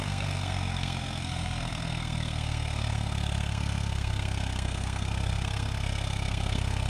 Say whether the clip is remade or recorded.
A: remade